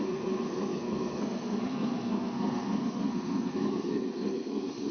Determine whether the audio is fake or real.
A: fake